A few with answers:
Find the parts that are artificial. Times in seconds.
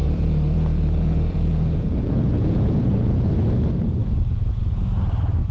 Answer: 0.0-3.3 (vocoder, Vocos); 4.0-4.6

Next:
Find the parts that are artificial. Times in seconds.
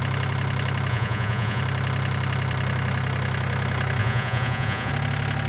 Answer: 0.9-1.6 (vocoder, Vocos); 4.0-4.9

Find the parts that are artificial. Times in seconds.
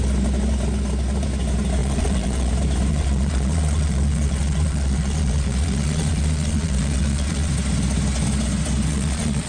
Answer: 1.8-2.5 (vocoder, Vocos); 2.9-7.5; 8.9-9.5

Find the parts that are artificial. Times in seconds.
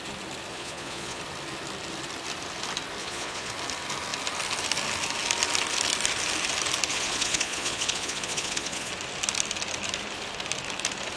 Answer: 0.5-1.2 (vocoder, Vocos); 3.0-3.5; 6.9-8.9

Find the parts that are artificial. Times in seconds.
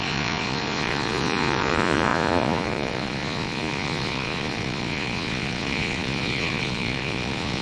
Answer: 0.0-7.6 (vocoder, Vocos)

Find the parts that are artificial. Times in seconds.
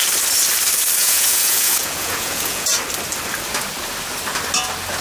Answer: 1.0-2.7 (vocoder, Vocos)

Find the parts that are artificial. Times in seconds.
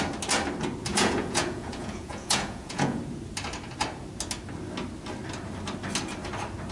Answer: 0.9-3.0 (vocoder, Vocos)